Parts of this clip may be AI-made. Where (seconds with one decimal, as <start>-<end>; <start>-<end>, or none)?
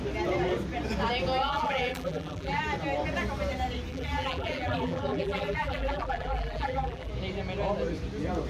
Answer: 1.4-2.6; 3.9-7.1